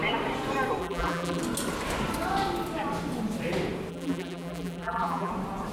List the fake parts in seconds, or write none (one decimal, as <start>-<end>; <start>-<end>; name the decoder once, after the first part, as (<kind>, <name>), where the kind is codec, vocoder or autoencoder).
0.8-1.4 (vocoder, BigVGAN v2); 3.9-5.3